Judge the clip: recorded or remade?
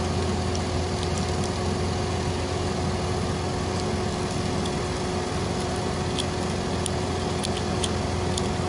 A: recorded